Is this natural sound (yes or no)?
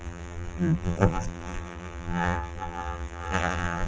no